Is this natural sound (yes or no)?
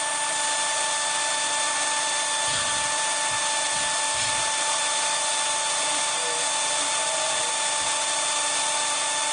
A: yes